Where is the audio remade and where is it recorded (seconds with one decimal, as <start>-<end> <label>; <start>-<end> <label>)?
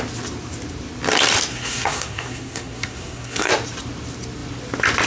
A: 0.0-1.5 recorded; 1.5-3.5 remade; 3.5-5.1 recorded